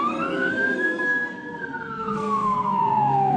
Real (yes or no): no